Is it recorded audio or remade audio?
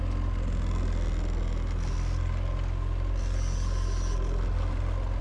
recorded